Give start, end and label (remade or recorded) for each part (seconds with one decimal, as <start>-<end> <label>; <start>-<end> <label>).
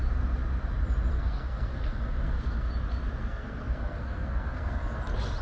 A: 0.0-1.1 recorded; 1.1-2.7 remade; 2.7-3.2 recorded; 3.2-5.0 remade; 5.0-5.4 recorded